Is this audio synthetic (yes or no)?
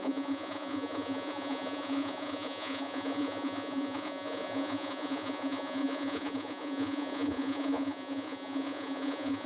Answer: yes